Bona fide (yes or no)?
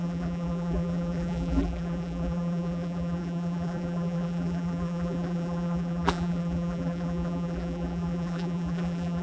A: no